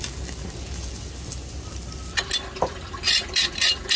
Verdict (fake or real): real